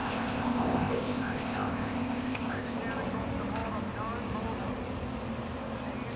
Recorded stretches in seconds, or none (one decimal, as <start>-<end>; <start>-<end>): 2.8-6.2